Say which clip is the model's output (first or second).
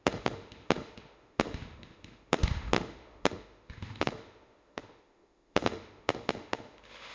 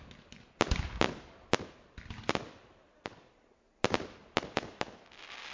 first